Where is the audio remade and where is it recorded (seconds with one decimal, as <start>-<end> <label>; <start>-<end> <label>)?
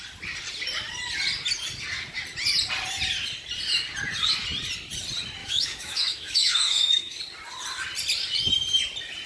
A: 0.0-5.4 recorded; 5.4-7.2 remade; 7.2-9.3 recorded